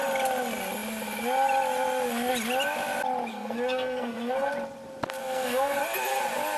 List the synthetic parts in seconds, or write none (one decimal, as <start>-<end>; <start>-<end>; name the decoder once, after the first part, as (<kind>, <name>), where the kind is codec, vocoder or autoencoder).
3.3-4.5 (codec, SNAC); 5.2-5.8